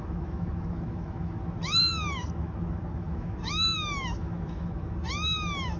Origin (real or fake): fake